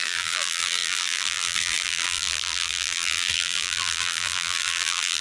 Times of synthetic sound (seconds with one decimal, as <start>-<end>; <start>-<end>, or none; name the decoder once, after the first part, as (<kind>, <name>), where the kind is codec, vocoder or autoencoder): 0.0-5.2 (vocoder, BigVGAN v2)